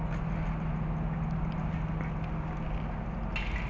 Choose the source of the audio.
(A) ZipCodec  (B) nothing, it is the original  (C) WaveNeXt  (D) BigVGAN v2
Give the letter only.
B